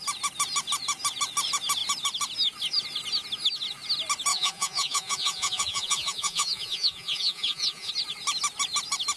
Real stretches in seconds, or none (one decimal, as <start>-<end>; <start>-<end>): 0.0-4.3; 7.9-9.2